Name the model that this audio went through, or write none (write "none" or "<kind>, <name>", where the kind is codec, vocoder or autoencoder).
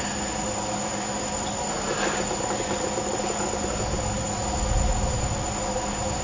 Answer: none